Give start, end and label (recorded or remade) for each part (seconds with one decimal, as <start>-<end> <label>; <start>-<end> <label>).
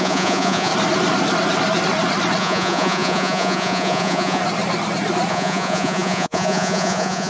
0.0-0.7 remade; 0.7-2.4 recorded; 2.4-4.4 remade; 4.4-5.3 recorded; 5.3-7.3 remade